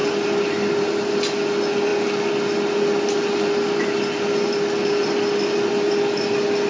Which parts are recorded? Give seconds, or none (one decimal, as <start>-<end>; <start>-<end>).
0.0-6.7